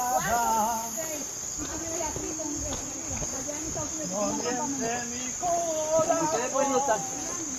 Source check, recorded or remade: recorded